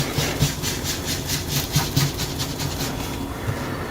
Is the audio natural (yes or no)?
yes